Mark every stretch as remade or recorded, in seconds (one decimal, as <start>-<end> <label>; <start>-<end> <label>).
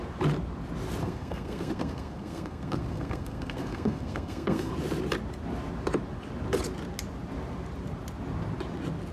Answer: 0.0-1.0 recorded; 1.0-4.7 remade; 4.7-9.1 recorded